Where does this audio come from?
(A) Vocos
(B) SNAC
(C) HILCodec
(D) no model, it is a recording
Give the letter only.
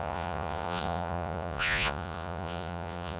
A